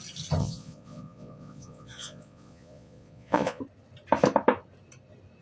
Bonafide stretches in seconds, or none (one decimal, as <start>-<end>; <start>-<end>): 0.0-0.4; 3.6-5.4

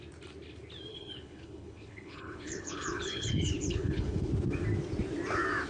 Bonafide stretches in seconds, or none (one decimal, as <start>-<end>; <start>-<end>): 0.0-0.9; 4.3-5.7

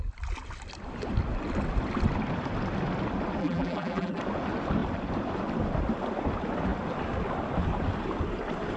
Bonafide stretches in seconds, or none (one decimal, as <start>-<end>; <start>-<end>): 0.0-3.4; 4.2-8.8

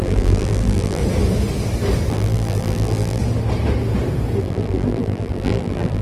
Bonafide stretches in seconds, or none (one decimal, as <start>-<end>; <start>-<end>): 1.0-2.1; 3.2-4.4

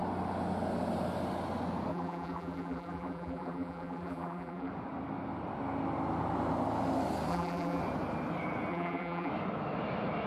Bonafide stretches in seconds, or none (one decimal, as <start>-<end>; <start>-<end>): 0.0-1.9; 4.7-7.3; 7.8-8.7; 9.3-10.3

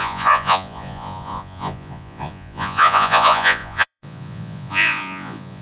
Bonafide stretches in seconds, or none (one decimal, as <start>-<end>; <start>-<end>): none

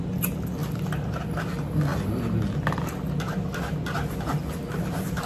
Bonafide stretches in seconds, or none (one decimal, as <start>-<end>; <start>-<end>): 0.0-5.3